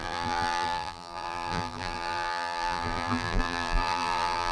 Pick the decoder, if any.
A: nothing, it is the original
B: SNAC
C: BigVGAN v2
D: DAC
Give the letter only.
C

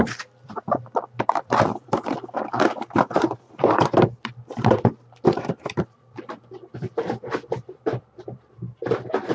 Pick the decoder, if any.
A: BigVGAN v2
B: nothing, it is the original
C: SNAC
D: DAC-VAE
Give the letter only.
A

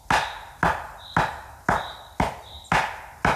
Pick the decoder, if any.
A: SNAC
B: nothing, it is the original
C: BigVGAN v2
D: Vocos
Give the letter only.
B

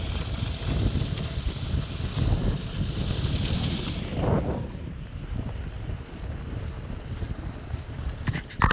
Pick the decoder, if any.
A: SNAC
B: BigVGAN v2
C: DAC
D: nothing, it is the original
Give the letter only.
D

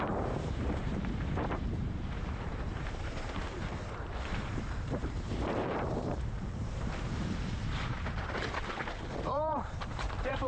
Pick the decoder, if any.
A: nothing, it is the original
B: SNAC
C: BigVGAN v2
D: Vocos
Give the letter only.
C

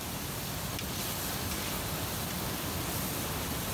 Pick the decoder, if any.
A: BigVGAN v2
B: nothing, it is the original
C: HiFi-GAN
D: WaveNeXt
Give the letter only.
B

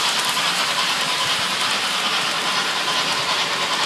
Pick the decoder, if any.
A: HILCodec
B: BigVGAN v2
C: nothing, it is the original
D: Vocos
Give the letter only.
B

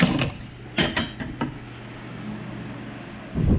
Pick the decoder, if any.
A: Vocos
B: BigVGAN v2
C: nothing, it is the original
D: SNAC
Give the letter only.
C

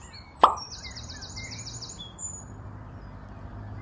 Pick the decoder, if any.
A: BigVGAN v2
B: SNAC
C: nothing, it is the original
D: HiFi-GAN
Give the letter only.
A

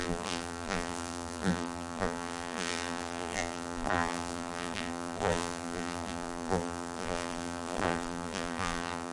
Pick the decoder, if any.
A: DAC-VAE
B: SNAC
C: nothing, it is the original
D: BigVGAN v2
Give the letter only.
D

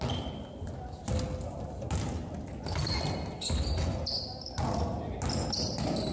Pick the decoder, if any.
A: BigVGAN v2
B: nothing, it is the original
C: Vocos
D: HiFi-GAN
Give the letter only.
B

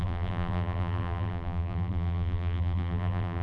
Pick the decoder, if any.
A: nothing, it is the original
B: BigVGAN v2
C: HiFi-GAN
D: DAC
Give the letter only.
B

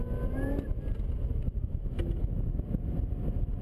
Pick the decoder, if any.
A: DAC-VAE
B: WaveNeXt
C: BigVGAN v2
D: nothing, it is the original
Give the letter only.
D